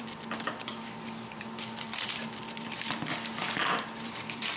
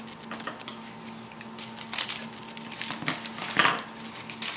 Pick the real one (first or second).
second